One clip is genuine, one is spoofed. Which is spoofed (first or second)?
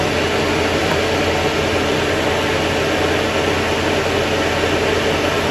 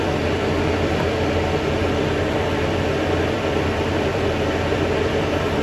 second